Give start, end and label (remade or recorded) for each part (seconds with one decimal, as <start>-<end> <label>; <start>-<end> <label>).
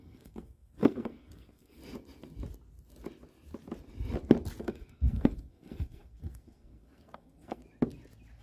0.0-1.8 remade; 1.8-4.6 recorded; 4.6-7.6 remade; 7.6-8.4 recorded